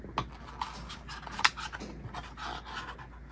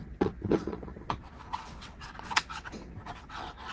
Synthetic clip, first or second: second